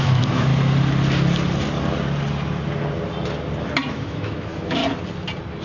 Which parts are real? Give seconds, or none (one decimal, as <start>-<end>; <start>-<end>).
0.5-3.9; 4.8-5.6